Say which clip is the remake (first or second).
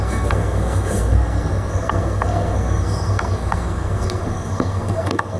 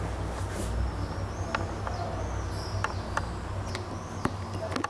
first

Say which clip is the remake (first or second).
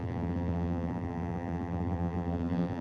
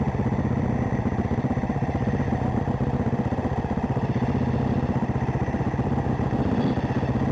first